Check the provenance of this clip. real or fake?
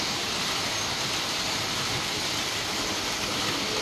real